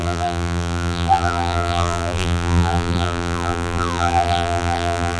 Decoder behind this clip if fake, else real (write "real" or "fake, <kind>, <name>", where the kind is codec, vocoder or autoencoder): fake, vocoder, BigVGAN v2